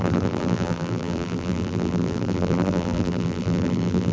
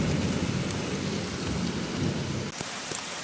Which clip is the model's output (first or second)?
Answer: first